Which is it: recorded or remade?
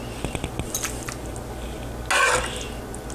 recorded